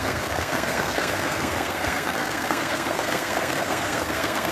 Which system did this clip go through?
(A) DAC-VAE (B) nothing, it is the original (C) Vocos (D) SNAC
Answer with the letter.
D